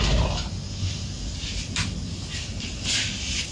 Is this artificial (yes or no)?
no